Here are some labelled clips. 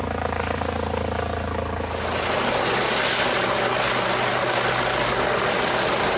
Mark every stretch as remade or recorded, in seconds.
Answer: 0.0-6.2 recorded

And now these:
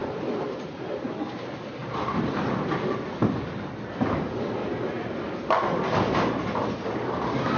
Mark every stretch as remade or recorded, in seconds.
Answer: 0.0-0.6 remade; 0.6-1.8 recorded; 1.8-2.4 remade; 2.4-7.6 recorded